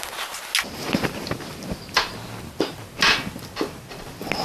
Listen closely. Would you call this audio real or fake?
real